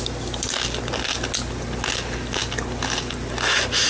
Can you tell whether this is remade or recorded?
recorded